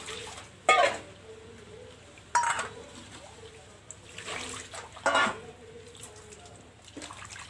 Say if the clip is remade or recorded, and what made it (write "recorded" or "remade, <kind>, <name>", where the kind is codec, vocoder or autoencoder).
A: recorded